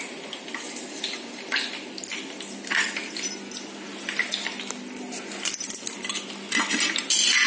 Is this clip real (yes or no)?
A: yes